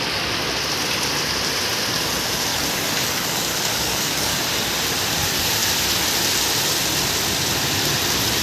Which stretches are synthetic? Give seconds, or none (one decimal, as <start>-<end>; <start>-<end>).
2.5-4.4